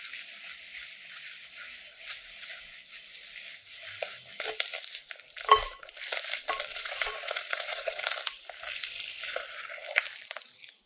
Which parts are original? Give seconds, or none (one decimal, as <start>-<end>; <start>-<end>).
0.0-6.7; 8.0-10.9